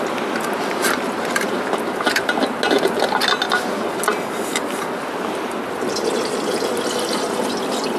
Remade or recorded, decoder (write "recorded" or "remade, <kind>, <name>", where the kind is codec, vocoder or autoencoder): recorded